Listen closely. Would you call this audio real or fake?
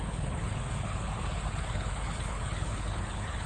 fake